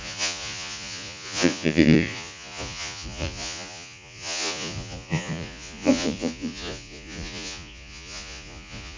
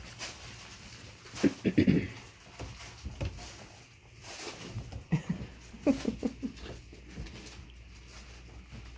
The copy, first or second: first